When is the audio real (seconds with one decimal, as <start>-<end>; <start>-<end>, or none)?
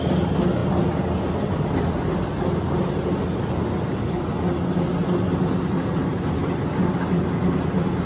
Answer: 0.0-8.1